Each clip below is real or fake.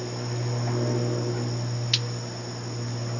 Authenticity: real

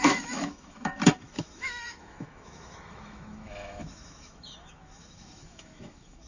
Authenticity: fake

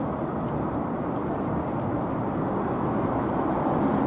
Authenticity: real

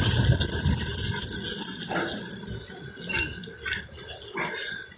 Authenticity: real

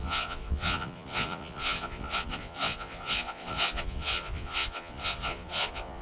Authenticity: fake